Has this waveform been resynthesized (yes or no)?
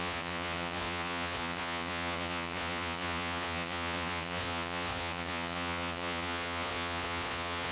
yes